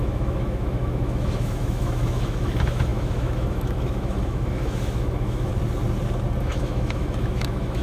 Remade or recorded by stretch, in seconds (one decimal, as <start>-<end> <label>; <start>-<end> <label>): 0.0-5.5 remade; 5.5-6.4 recorded; 6.4-7.8 remade